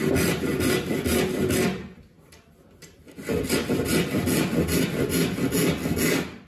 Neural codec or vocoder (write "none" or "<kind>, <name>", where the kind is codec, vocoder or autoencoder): none